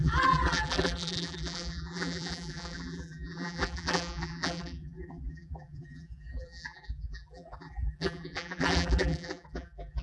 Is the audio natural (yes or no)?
no